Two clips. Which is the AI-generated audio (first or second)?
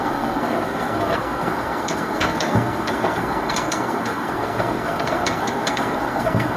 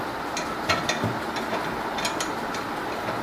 first